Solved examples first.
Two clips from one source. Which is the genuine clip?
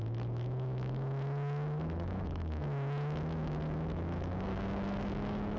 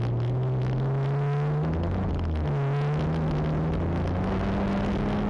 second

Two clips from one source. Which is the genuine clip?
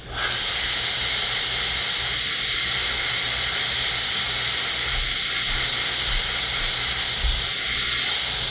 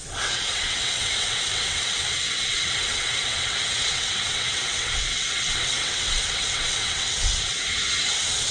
first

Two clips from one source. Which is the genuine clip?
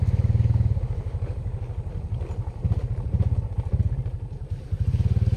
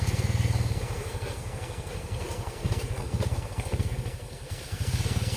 first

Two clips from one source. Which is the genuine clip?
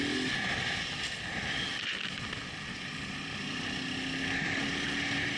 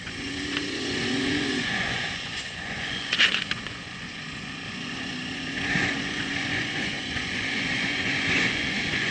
first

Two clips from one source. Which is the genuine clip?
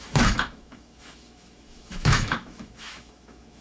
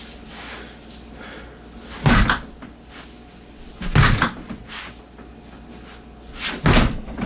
second